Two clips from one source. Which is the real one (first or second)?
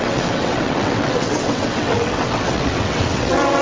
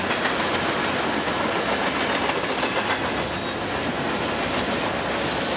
second